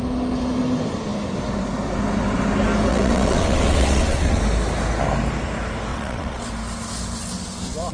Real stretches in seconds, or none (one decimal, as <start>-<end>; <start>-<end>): 0.0-2.9; 4.4-5.9; 6.5-7.9